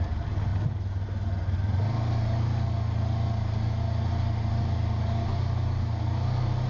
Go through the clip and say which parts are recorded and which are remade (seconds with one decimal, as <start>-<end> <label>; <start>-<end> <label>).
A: 0.0-6.7 recorded